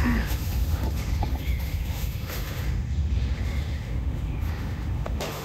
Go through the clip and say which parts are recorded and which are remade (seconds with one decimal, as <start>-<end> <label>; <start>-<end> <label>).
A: 0.0-5.4 remade